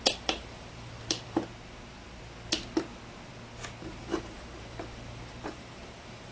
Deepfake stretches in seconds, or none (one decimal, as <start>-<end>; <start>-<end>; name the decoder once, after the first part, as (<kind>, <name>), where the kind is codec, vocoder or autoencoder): 0.0-1.4 (vocoder, BigVGAN v2); 3.9-6.3